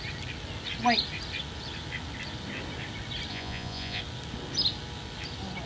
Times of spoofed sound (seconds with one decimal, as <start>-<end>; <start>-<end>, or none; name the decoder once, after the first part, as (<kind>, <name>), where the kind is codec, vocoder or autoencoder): 3.3-4.0 (vocoder, Vocos)